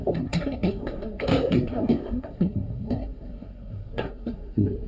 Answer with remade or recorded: remade